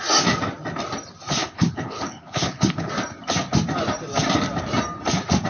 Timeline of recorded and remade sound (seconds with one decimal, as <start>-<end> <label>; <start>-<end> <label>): 0.0-1.4 recorded; 1.4-2.9 remade; 2.9-5.5 recorded